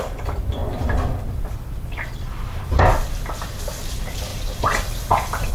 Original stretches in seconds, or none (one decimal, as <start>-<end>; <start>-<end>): 0.0-0.6; 1.5-4.3